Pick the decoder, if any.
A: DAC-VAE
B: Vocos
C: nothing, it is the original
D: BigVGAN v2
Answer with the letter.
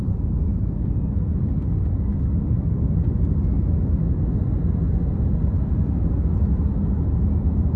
C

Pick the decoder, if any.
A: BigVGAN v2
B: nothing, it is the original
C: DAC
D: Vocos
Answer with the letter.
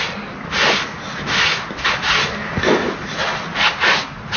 B